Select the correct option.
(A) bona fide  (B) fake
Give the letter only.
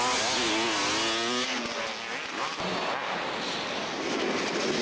A